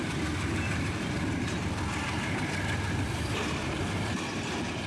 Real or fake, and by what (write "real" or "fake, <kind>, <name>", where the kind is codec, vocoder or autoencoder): fake, vocoder, BigVGAN v2